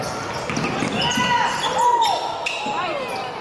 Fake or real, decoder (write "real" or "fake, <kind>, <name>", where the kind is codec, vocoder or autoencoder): real